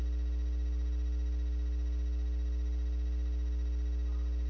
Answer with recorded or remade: recorded